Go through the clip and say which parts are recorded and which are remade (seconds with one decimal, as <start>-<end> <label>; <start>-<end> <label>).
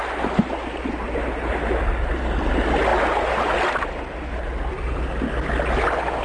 0.0-6.2 recorded